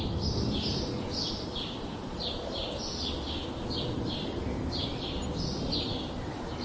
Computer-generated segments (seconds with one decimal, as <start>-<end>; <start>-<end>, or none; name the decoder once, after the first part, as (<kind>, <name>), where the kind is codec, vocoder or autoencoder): none